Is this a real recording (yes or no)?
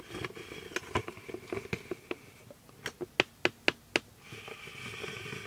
yes